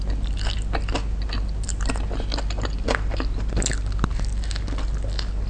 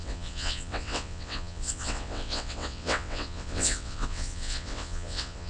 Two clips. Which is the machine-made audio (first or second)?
second